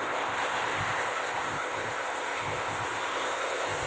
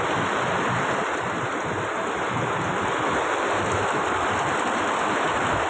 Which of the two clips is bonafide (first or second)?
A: second